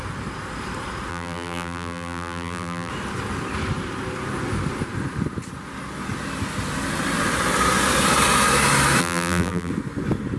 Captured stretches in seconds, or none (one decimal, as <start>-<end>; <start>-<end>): 0.0-1.1; 2.9-9.0; 9.7-10.4